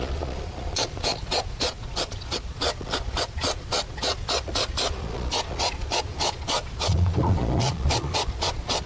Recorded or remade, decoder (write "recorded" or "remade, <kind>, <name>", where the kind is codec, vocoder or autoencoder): remade, vocoder, Vocos